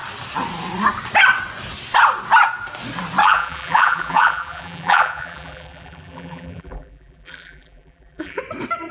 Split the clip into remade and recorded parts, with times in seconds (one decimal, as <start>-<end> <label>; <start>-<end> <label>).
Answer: 0.0-3.2 recorded; 3.2-8.4 remade; 8.4-8.9 recorded